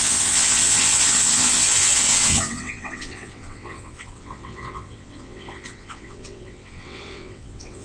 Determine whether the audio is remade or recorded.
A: remade